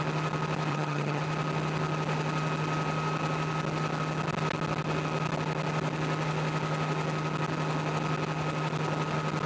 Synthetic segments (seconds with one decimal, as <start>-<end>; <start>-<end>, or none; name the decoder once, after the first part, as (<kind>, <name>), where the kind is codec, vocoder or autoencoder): 0.7-1.2 (vocoder, HiFi-GAN)